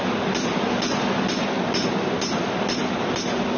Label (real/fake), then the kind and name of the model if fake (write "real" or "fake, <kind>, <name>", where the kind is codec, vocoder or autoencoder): real